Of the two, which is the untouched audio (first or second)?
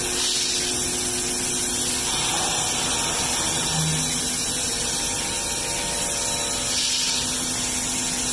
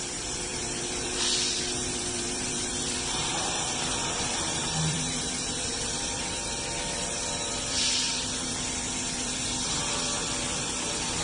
first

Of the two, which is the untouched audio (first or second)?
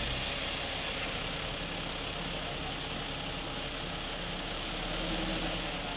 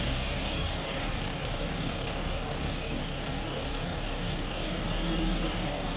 first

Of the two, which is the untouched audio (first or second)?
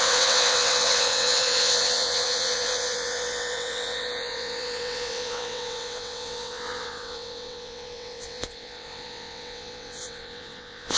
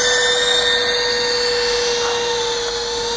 second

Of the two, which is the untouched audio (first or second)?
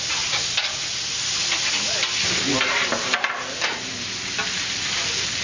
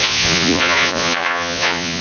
first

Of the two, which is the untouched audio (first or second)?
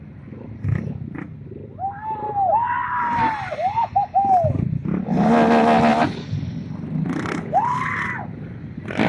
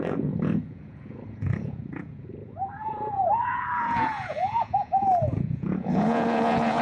first